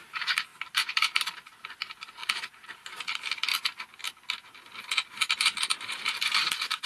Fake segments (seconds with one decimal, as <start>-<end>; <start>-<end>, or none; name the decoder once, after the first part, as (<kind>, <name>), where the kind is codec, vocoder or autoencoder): 0.0-3.5 (vocoder, BigVGAN v2); 5.4-6.9